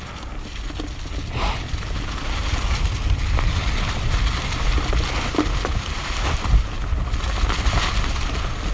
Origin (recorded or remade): recorded